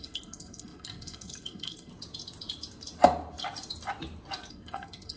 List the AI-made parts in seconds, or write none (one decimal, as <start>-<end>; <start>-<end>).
0.0-1.9; 4.5-5.2